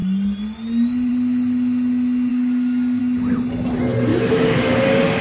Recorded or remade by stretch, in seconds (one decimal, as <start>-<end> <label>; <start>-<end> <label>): 0.0-2.3 recorded; 2.3-3.0 remade; 3.0-4.1 recorded; 4.1-5.2 remade